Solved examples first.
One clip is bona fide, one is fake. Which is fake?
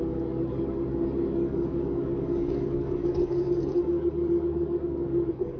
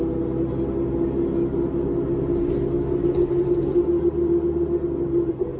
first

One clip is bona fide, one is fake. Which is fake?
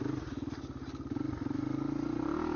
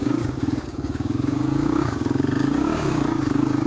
second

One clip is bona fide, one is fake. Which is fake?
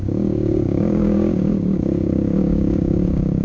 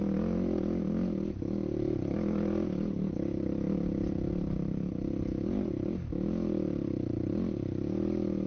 first